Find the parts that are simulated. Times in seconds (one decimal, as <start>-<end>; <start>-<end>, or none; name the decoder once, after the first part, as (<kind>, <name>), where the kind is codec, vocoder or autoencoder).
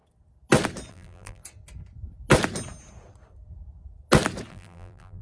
0.9-1.4 (vocoder, BigVGAN v2); 4.5-5.2